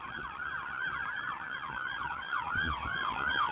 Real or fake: fake